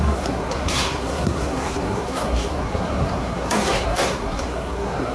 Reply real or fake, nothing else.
fake